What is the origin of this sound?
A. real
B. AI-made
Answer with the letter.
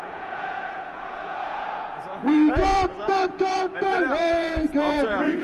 B